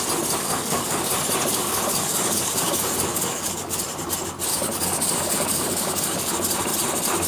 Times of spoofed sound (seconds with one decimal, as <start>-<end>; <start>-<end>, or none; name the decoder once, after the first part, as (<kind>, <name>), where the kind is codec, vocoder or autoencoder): 0.4-1.1 (codec, DAC); 1.5-3.8; 4.5-6.3